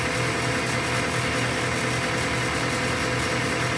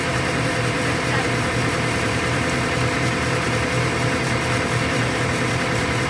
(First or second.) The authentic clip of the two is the first